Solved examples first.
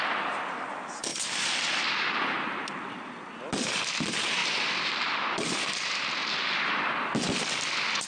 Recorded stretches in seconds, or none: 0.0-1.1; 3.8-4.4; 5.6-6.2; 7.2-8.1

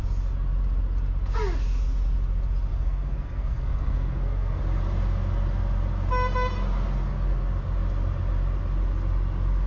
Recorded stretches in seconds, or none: 0.0-2.7; 4.6-9.7

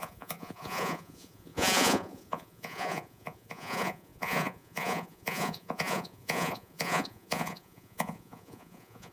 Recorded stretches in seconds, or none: none

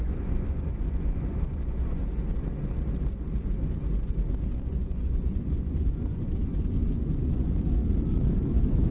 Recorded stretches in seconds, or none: 2.0-4.6; 7.8-8.5

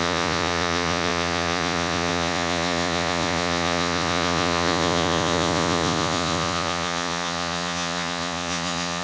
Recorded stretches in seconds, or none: none